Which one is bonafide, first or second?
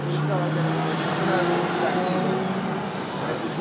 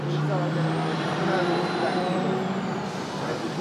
first